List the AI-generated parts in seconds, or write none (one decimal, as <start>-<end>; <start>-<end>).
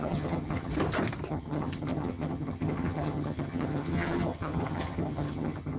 0.0-0.7; 1.3-5.8